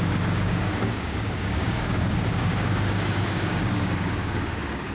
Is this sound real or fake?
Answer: fake